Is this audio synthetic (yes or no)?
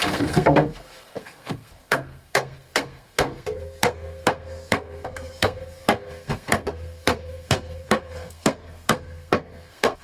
yes